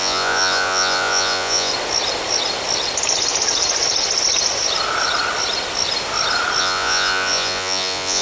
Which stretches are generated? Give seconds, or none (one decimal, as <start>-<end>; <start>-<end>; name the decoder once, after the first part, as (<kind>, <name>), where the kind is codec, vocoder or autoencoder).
0.0-1.7 (vocoder, Vocos); 6.6-8.2